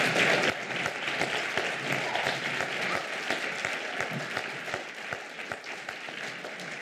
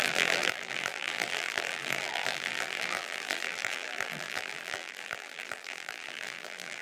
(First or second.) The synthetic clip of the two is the second